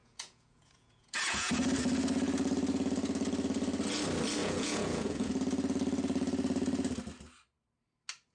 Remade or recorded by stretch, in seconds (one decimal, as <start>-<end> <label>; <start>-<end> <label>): 0.0-1.5 remade; 1.5-4.4 recorded; 4.4-5.3 remade; 5.3-8.3 recorded